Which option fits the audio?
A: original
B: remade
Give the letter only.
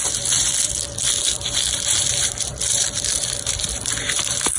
B